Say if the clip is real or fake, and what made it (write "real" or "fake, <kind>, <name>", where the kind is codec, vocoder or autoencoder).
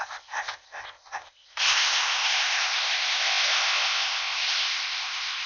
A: fake, codec, ZipCodec